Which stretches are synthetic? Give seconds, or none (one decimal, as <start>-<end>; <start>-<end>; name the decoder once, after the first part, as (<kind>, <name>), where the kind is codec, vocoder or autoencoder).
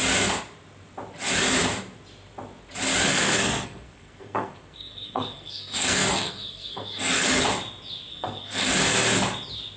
3.1-7.4 (codec, SNAC); 8.1-8.7